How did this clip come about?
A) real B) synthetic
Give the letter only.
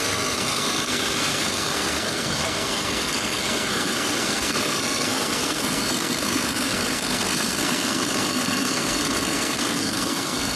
B